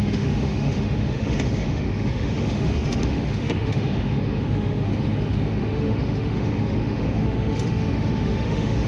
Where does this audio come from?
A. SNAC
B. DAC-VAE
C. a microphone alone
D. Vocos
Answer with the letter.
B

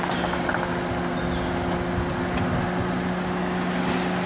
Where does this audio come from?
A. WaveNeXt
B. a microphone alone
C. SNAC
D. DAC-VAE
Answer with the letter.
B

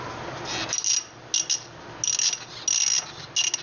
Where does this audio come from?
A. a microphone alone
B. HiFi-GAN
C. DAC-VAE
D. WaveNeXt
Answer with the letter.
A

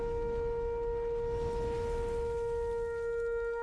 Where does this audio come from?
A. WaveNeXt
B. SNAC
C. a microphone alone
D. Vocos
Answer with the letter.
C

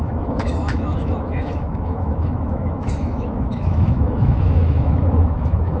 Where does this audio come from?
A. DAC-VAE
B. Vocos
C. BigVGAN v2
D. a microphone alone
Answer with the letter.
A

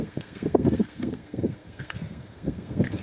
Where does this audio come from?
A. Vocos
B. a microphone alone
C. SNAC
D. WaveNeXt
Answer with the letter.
C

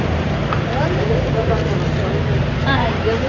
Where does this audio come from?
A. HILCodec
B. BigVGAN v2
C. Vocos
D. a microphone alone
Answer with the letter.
D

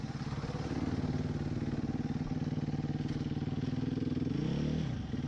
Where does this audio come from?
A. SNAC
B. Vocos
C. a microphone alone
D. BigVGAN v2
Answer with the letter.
C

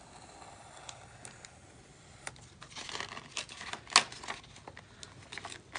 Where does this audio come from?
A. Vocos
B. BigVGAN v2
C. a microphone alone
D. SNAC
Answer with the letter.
C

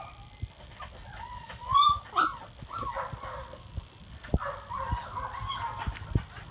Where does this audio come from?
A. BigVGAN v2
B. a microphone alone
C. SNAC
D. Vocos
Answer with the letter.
B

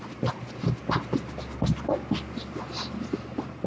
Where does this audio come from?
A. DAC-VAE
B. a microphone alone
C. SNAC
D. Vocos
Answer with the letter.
B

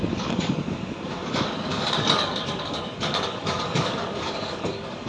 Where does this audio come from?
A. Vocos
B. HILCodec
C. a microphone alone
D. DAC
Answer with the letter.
D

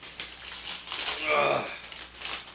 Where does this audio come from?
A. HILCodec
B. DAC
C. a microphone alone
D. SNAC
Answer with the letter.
C